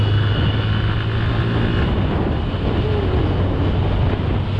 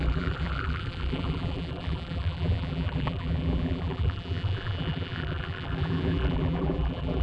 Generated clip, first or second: second